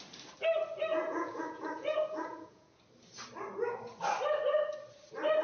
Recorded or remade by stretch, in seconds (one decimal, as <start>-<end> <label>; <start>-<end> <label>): 0.0-0.9 recorded; 0.9-2.8 remade; 2.8-5.4 recorded